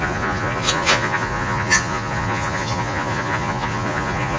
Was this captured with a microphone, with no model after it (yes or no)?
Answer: no